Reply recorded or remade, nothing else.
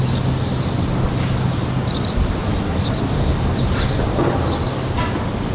recorded